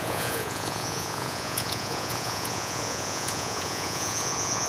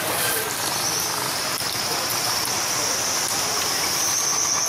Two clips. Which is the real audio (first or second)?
second